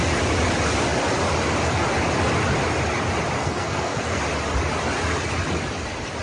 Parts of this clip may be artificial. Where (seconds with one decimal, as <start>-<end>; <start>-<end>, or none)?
3.4-4.2